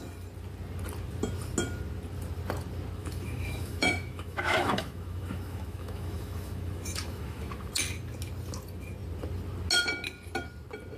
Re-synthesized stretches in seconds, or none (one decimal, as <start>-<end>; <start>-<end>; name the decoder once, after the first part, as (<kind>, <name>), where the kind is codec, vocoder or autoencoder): 3.0-7.7 (autoencoder, DAC-VAE)